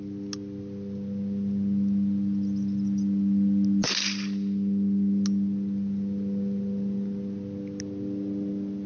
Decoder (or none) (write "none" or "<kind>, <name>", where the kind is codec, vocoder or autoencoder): none